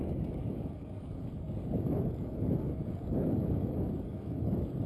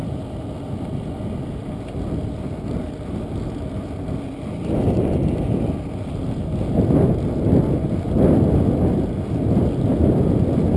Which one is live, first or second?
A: second